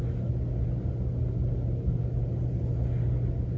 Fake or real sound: real